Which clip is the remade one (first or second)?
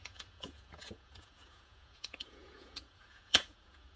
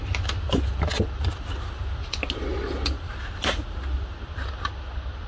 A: first